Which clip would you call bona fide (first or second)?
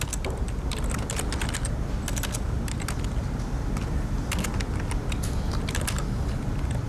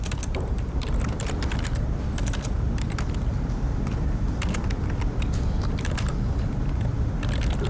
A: first